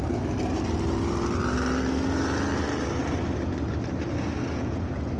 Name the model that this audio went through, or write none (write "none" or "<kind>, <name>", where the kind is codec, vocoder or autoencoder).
none